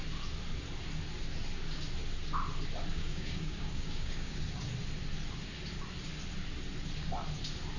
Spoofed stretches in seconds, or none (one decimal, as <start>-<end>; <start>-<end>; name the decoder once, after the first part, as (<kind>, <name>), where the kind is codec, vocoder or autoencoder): 2.9-4.4 (codec, DAC)